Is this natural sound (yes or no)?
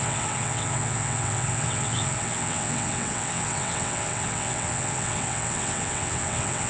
no